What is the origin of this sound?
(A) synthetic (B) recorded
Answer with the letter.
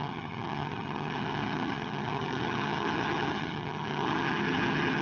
A